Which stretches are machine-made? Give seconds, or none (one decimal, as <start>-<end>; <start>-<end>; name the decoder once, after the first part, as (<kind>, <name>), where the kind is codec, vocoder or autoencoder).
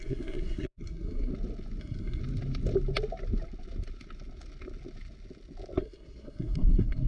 0.0-1.3 (codec, SNAC); 1.8-2.2; 5.8-7.1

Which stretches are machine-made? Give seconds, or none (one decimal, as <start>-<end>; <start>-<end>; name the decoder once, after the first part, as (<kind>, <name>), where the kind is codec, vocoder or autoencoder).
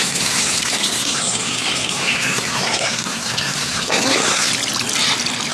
0.0-4.5 (codec, SNAC)